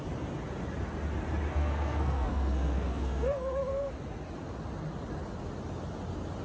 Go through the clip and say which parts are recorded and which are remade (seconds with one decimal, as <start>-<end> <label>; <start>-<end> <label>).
0.0-1.5 recorded; 1.5-3.9 remade; 3.9-6.4 recorded